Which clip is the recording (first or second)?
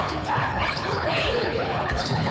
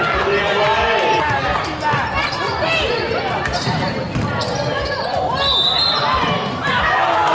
second